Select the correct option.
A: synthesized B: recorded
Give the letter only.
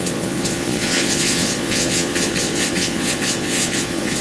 A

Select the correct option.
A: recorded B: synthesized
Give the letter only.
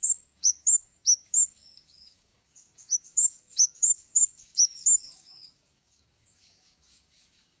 B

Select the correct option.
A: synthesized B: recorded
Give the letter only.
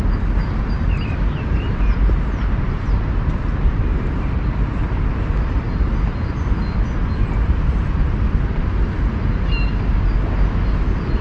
B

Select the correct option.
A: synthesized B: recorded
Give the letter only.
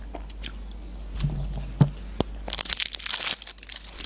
B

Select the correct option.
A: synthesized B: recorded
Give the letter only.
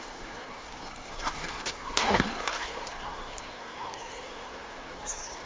A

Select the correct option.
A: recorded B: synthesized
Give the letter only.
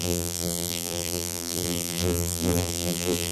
B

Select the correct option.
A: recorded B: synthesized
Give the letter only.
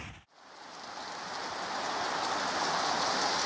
A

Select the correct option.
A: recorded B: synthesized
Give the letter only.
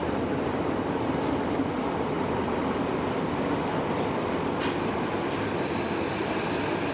A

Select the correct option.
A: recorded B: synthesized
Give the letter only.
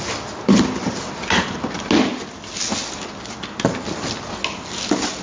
A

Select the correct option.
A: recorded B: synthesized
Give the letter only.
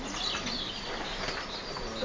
A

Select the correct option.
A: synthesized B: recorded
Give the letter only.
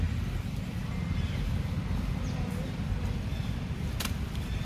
B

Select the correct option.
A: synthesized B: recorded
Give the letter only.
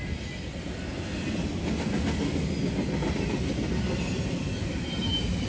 B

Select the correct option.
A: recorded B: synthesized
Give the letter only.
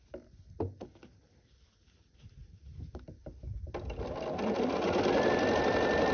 A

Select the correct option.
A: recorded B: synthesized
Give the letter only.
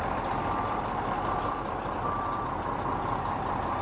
B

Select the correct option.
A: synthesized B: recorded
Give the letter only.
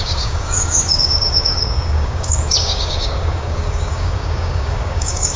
A